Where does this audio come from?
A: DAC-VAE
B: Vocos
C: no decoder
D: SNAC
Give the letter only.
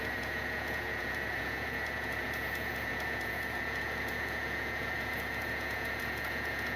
B